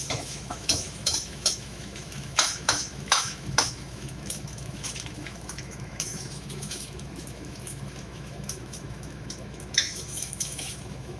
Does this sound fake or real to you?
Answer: fake